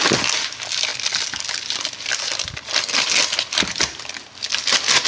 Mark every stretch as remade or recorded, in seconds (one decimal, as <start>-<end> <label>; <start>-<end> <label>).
0.0-5.1 recorded

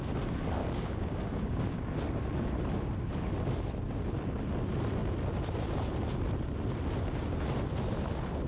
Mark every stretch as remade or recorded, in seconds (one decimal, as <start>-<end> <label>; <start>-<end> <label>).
0.0-0.6 recorded; 0.6-1.9 remade; 1.9-8.5 recorded

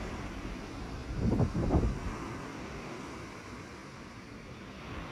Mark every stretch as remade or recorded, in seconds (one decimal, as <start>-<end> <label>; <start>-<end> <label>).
0.0-2.5 recorded; 2.5-3.1 remade; 3.1-5.1 recorded

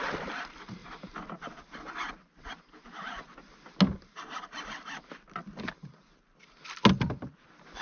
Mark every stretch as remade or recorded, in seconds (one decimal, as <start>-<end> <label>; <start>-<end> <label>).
0.0-7.8 recorded

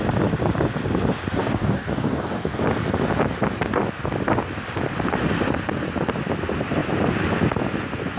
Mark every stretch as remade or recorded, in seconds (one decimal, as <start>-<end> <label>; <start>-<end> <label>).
0.0-1.4 recorded; 1.4-2.6 remade; 2.6-8.2 recorded